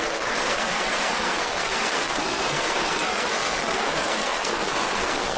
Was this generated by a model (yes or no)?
yes